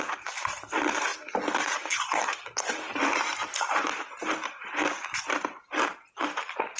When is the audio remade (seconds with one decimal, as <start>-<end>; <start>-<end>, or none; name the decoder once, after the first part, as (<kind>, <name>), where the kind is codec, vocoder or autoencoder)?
none